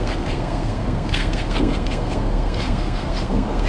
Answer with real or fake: fake